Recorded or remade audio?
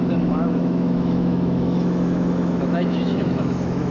remade